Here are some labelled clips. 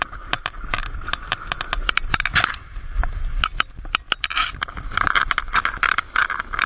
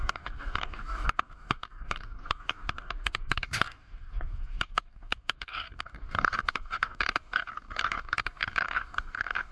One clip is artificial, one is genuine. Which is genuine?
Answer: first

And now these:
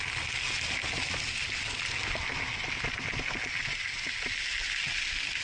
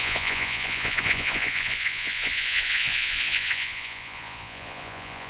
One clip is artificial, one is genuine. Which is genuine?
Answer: first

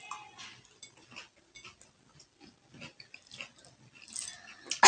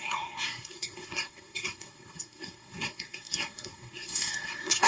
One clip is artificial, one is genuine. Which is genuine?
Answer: first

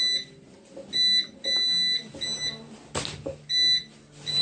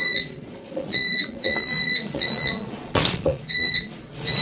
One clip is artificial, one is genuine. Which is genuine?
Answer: first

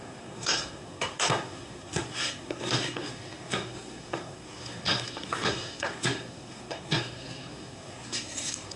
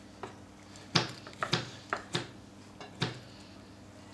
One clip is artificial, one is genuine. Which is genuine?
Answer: second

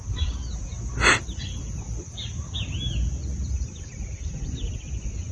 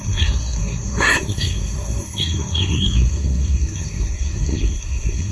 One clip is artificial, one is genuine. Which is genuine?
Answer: first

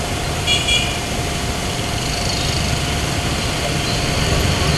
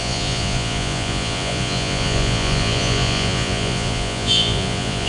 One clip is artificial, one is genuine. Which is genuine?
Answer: first